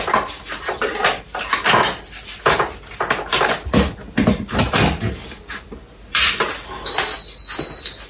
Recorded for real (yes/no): yes